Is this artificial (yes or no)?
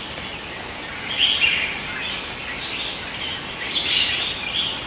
no